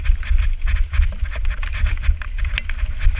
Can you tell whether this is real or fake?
real